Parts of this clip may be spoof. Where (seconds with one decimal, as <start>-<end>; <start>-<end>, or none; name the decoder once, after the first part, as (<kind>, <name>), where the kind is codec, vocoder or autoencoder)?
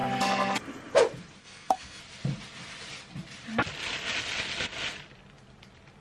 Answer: 1.4-2.0 (codec, SNAC)